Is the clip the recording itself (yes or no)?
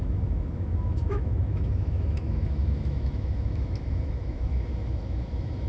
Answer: no